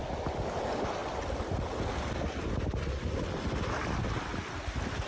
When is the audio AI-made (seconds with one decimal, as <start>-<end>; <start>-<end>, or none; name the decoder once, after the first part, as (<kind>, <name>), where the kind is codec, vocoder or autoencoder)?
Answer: none